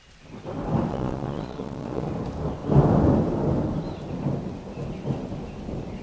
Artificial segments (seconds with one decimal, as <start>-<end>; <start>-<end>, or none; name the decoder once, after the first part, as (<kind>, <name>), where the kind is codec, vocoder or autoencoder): 0.9-2.1 (vocoder, Vocos)